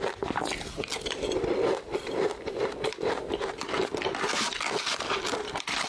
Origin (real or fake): real